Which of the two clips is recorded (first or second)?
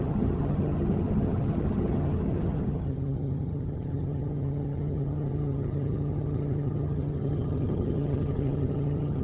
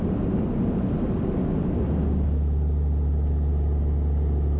second